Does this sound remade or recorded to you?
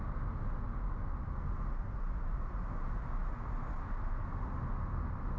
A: recorded